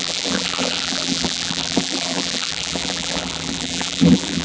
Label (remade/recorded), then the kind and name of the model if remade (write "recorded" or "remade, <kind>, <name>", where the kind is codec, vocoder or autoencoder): remade, vocoder, BigVGAN v2